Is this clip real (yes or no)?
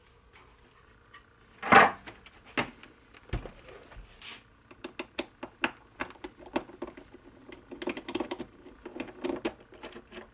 yes